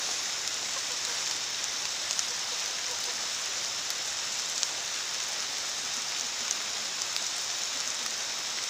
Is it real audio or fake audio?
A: real